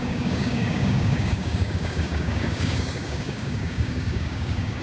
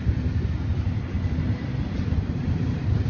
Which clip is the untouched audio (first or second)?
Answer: second